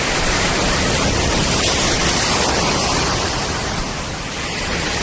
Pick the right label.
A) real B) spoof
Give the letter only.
A